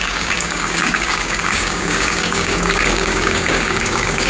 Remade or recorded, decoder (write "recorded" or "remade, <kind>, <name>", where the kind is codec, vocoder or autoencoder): remade, codec, DAC